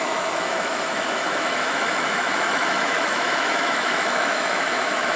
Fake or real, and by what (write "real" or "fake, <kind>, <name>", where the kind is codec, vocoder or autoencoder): fake, autoencoder, DAC-VAE